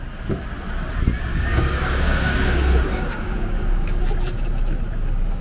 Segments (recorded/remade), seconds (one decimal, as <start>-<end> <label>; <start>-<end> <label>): 0.0-1.3 recorded; 1.3-4.0 remade; 4.0-5.4 recorded